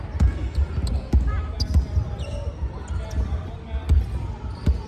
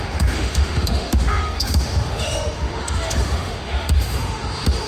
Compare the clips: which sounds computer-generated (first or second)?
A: second